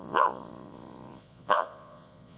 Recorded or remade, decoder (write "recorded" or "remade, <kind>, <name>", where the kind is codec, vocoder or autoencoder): remade, vocoder, Vocos